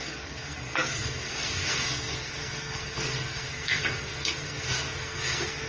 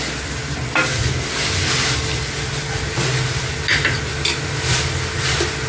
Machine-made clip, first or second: first